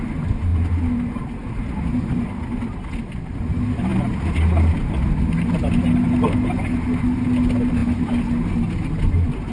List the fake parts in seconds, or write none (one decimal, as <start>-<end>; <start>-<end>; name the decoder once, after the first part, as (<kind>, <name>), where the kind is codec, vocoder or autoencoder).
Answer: none